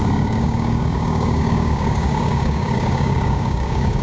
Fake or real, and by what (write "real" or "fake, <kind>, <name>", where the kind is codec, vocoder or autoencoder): fake, codec, DAC